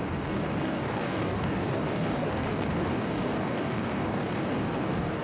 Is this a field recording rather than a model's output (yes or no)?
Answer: no